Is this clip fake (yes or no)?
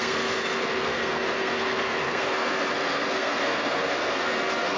yes